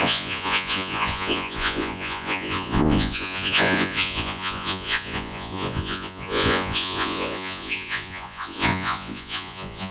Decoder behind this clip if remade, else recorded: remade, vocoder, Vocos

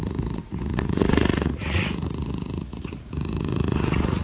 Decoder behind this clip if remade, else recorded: remade, vocoder, Vocos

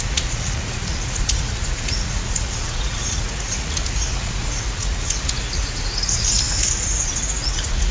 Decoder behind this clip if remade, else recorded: remade, vocoder, Vocos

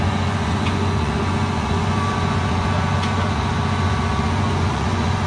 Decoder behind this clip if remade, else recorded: remade, vocoder, Vocos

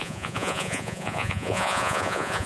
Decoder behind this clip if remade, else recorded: remade, vocoder, Vocos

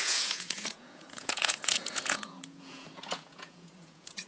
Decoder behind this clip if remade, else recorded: remade, vocoder, Vocos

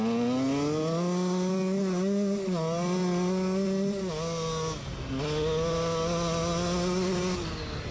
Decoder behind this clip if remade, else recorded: recorded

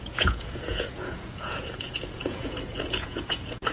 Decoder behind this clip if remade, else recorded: remade, vocoder, Vocos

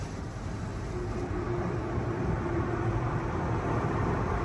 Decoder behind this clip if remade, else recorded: recorded